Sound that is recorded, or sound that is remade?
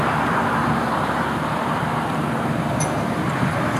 remade